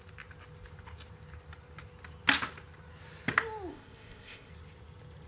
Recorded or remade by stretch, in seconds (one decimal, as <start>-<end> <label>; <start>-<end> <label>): 0.0-3.7 recorded; 3.7-4.5 remade; 4.5-5.3 recorded